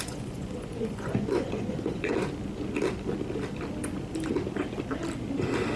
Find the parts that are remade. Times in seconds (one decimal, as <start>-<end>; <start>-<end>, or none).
0.0-2.1